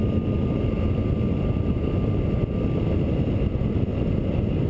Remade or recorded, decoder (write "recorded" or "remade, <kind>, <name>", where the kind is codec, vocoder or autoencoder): recorded